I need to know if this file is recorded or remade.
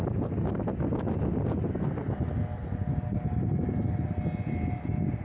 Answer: recorded